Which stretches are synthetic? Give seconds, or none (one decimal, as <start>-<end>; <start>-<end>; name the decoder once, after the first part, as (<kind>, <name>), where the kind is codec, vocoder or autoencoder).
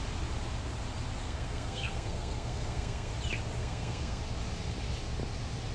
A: 1.2-3.1 (codec, SNAC); 3.6-4.2